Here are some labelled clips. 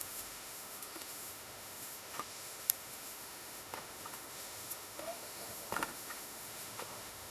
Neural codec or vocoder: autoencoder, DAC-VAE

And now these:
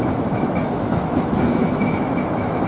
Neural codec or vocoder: autoencoder, DAC-VAE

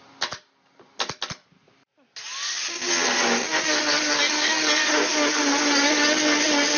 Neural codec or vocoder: none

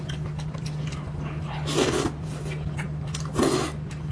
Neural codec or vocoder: none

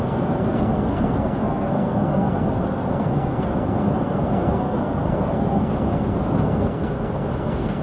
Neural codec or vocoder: codec, SNAC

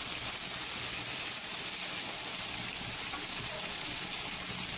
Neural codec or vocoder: none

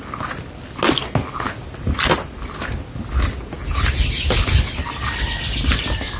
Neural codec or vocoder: none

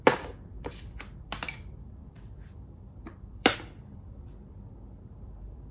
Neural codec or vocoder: vocoder, BigVGAN v2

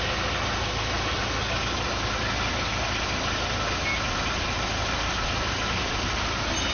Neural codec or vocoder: none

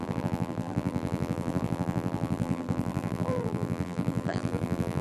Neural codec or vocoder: vocoder, BigVGAN v2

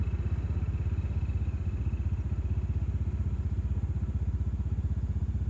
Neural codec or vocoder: none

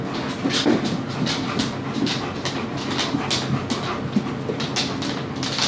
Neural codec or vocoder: none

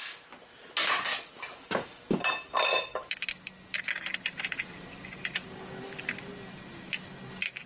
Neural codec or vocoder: none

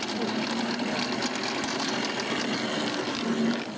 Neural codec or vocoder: none